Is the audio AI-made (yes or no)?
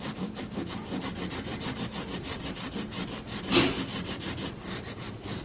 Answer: no